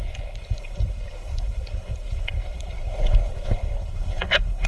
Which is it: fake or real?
fake